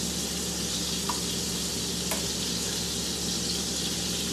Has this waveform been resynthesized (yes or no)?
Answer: no